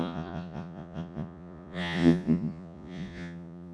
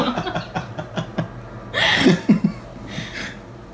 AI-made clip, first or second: first